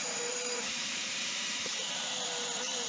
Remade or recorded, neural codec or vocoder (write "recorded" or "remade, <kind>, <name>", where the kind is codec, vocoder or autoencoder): remade, vocoder, BigVGAN v2